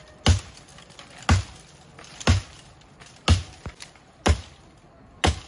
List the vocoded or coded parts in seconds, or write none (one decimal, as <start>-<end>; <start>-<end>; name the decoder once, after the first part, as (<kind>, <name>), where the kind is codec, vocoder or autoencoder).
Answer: none